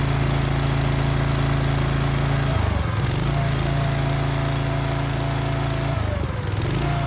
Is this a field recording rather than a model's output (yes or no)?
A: yes